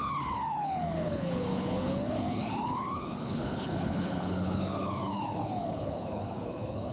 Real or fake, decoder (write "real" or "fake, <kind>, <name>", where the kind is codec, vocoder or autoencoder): fake, codec, HILCodec